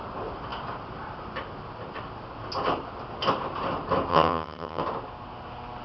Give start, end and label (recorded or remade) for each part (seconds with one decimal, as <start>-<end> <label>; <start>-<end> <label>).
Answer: 0.0-4.1 recorded; 4.1-4.8 remade; 4.8-5.8 recorded